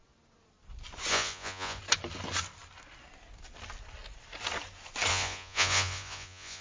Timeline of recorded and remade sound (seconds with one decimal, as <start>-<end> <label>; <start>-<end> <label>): 0.0-1.1 recorded; 1.1-1.8 remade; 1.8-5.1 recorded; 5.1-6.6 remade